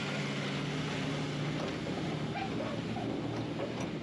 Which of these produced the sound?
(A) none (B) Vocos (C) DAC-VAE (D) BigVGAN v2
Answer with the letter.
A